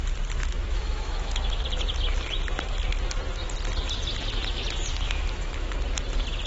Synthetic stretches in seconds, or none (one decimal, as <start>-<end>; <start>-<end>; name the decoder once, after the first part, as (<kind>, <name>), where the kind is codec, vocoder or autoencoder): 0.4-1.6 (autoencoder, DAC-VAE); 4.9-5.7